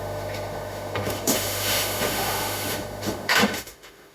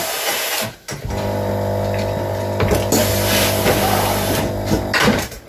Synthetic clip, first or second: first